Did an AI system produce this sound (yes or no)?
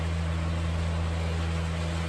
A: no